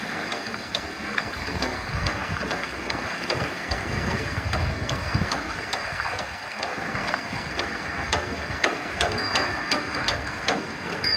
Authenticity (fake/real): fake